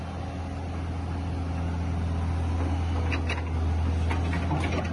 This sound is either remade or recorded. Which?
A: recorded